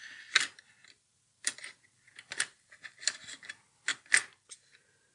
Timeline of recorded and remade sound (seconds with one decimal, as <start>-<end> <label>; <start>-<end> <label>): 0.0-5.1 recorded